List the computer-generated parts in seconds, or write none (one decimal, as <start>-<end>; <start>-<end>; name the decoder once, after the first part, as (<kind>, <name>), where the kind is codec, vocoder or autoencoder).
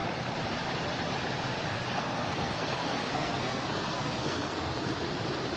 1.7-4.9 (codec, SNAC)